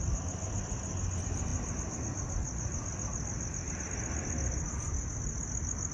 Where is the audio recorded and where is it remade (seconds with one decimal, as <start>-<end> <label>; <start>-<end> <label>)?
0.0-5.9 recorded